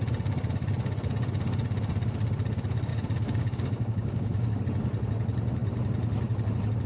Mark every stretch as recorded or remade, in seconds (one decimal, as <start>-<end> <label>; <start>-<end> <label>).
0.0-2.9 recorded; 2.9-4.6 remade; 4.6-6.9 recorded